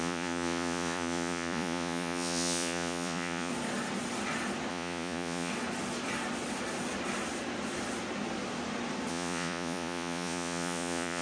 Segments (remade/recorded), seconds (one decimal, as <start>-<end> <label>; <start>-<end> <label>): 0.0-3.5 remade; 3.5-4.7 recorded; 4.7-5.5 remade; 5.5-9.1 recorded; 9.1-11.2 remade